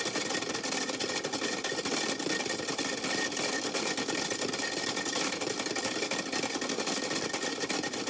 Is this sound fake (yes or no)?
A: no